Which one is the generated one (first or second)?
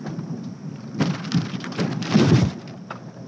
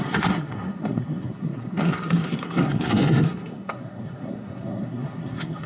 second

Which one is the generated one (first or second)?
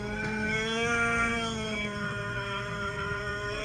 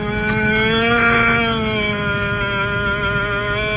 first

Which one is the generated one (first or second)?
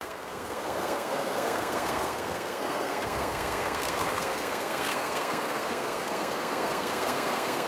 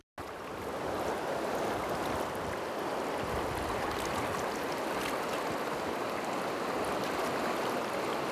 first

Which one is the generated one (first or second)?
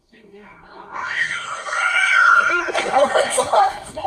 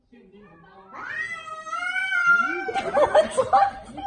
first